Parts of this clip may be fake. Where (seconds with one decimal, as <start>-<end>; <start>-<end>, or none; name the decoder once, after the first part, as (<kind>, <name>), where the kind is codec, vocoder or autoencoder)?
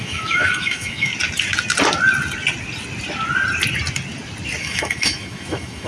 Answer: 0.0-1.1 (autoencoder, DAC-VAE); 4.6-5.9